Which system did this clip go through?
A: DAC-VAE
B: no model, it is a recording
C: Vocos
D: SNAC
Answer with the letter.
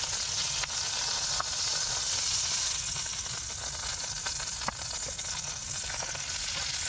B